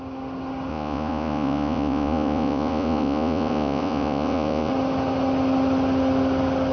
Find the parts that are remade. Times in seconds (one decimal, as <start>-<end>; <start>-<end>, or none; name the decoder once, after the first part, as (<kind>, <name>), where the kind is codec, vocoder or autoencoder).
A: 0.7-4.7 (vocoder, Vocos)